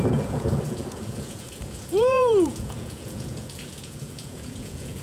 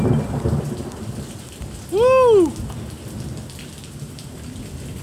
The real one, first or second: second